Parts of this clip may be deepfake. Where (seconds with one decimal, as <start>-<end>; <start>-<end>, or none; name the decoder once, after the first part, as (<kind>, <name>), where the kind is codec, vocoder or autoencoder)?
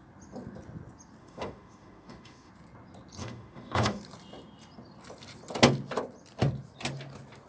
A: 1.2-2.5 (autoencoder, DAC-VAE); 3.2-4.0